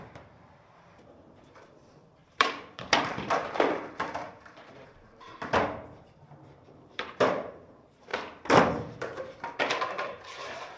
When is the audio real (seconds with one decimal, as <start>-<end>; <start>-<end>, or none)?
5.3-6.7; 8.1-9.5